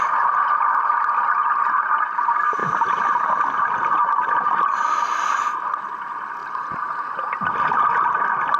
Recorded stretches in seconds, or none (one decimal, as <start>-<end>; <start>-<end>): 0.0-2.6; 3.2-4.0; 6.0-6.4; 6.9-8.6